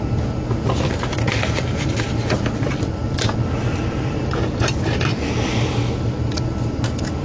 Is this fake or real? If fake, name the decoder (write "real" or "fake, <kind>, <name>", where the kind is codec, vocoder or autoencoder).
real